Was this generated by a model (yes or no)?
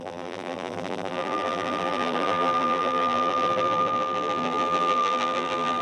yes